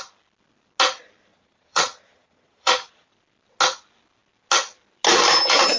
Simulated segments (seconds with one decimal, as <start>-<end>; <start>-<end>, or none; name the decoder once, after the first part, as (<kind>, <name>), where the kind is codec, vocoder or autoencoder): 1.3-3.1 (vocoder, Vocos)